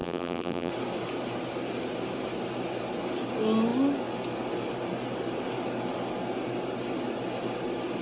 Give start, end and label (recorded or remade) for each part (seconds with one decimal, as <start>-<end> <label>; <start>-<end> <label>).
0.0-0.7 remade; 0.7-8.0 recorded